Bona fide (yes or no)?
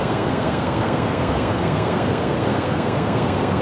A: no